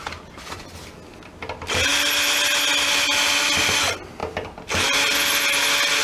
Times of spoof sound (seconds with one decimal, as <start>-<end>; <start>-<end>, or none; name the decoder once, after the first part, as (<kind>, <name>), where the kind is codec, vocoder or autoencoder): none